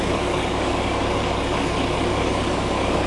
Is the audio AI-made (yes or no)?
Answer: yes